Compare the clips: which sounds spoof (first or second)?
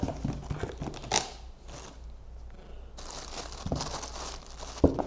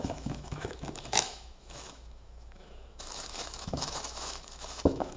second